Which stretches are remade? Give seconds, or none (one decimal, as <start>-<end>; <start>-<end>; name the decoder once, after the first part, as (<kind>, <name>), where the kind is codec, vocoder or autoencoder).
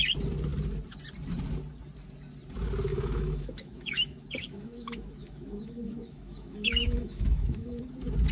2.9-7.8 (autoencoder, DAC-VAE)